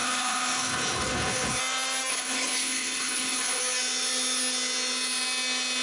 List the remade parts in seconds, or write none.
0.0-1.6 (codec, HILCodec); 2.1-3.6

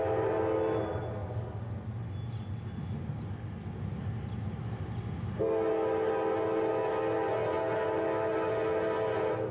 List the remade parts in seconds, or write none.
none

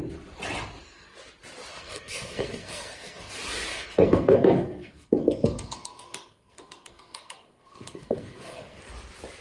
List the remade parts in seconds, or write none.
1.7-3.3 (codec, SNAC); 3.7-8.8